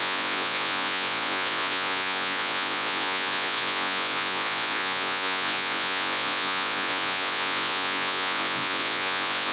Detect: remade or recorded remade